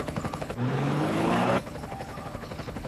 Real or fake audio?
fake